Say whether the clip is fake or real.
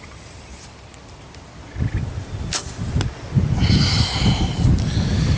real